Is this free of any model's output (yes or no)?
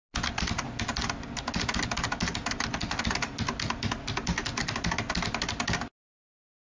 yes